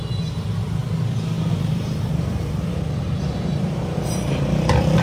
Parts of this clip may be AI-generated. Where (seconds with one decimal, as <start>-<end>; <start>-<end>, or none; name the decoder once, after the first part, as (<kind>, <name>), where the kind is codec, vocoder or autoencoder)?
0.0-0.8 (vocoder, BigVGAN v2); 1.5-5.0